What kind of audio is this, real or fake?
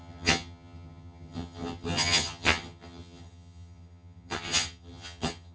fake